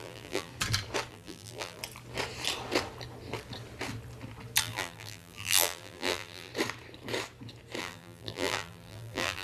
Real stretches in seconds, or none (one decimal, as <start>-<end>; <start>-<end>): 0.5-1.1; 1.8-4.6; 6.5-7.8